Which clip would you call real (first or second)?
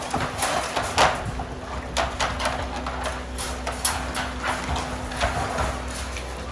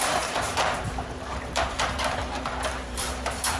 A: first